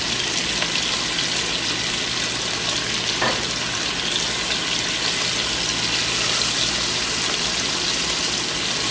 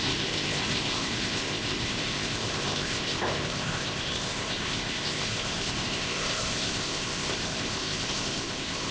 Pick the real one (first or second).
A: first